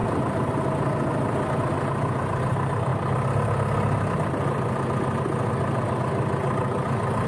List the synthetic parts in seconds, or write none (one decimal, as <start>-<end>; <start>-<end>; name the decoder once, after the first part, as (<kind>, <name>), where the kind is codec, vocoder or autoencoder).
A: none